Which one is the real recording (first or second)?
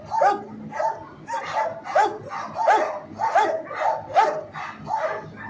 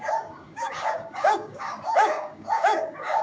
first